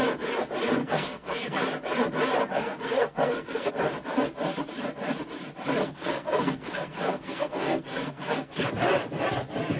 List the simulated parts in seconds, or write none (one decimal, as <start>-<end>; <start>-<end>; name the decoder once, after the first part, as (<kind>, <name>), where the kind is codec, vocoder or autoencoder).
0.8-1.6 (codec, SNAC); 2.4-3.7; 5.8-8.7